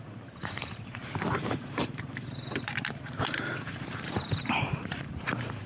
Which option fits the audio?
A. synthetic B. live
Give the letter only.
A